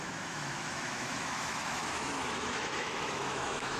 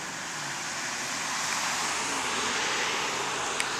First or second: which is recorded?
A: second